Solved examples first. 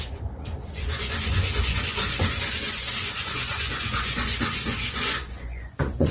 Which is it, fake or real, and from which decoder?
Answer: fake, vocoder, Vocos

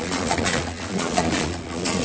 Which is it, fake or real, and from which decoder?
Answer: fake, vocoder, Vocos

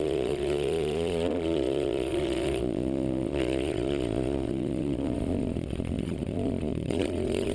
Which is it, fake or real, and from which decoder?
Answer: fake, vocoder, Vocos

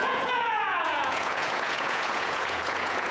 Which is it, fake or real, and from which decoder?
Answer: fake, vocoder, Vocos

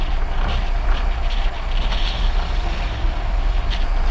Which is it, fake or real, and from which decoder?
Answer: real